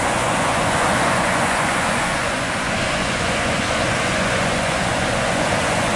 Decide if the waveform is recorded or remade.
remade